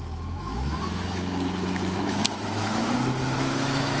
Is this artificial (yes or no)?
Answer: yes